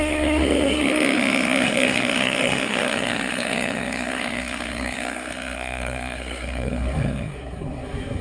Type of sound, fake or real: fake